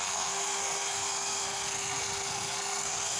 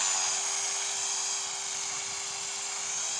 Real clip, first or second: second